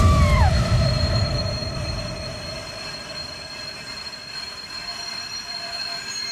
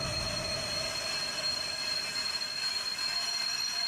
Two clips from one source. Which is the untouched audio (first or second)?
second